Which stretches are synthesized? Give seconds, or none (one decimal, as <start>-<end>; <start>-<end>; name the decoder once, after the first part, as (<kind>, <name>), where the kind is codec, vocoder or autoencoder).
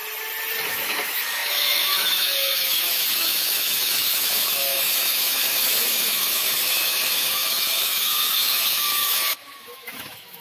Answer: 0.7-10.4 (autoencoder, DAC-VAE)